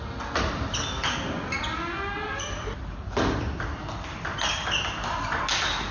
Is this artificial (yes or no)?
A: no